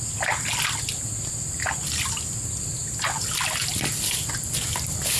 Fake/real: real